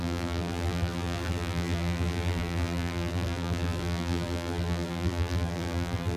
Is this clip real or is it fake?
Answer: fake